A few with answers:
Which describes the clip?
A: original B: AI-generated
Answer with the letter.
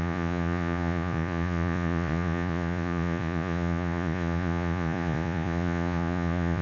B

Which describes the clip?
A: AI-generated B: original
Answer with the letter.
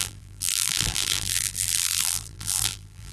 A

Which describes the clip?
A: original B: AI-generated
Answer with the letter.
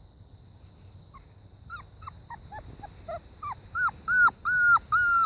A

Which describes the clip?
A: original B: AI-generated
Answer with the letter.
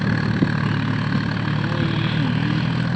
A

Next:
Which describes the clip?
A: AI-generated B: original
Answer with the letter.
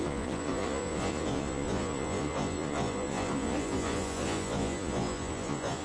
A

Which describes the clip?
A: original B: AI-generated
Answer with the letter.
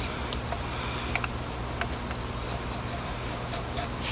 A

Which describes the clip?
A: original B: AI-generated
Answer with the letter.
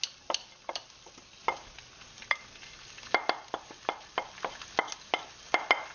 A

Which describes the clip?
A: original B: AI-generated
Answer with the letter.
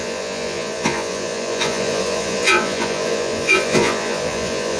B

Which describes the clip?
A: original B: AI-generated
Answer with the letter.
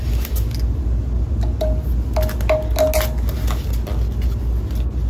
A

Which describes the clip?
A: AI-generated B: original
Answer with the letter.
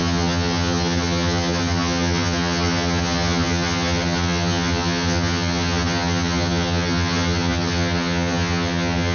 A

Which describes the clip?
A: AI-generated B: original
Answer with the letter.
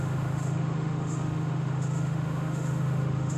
A